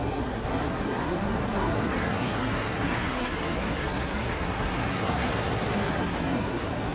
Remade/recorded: remade